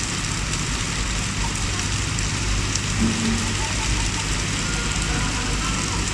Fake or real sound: real